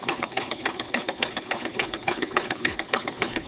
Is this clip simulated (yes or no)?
yes